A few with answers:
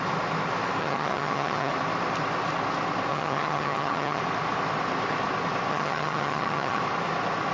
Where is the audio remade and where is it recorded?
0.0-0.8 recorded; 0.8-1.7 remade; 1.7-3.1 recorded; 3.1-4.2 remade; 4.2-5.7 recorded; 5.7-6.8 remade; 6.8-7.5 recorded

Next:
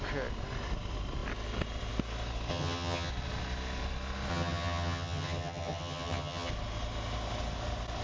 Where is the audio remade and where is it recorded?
0.0-2.5 recorded; 2.5-3.1 remade; 3.1-4.3 recorded; 4.3-6.5 remade; 6.5-8.0 recorded